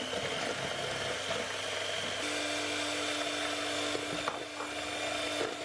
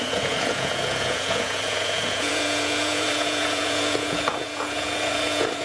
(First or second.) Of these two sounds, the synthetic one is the second